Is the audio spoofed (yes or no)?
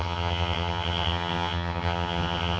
yes